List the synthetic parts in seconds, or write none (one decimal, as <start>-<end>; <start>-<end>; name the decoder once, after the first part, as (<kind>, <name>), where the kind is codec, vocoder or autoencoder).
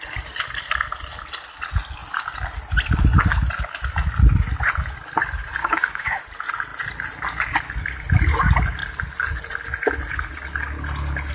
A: 5.6-6.2 (codec, DAC)